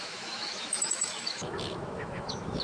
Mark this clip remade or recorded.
remade